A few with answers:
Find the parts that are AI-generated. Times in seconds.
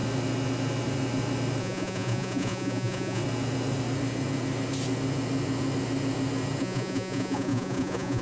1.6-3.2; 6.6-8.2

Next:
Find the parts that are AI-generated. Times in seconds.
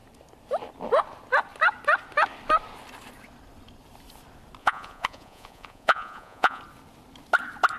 4.6-6.6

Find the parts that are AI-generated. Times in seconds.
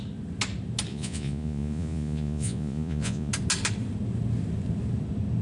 0.9-3.3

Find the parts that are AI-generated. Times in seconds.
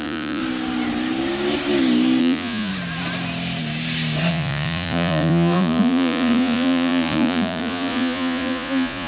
0.0-0.4; 2.2-2.7; 4.3-9.1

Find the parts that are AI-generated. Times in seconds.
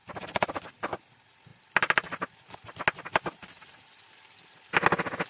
none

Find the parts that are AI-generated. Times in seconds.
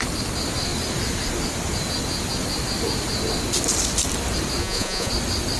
4.6-5.1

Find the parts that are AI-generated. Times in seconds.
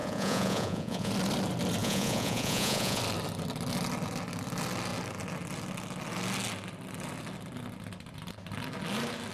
0.0-1.1; 1.8-3.0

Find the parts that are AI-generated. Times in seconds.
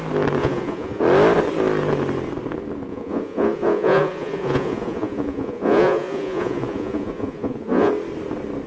0.4-1.0; 2.9-7.9